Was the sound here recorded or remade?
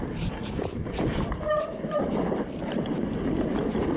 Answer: remade